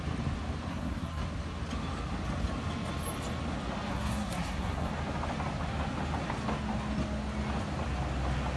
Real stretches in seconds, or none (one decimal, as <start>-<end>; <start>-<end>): 0.0-0.7; 1.2-3.9; 4.9-8.6